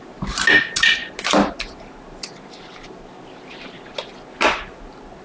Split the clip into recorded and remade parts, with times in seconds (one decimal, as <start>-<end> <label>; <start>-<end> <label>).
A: 0.0-5.2 recorded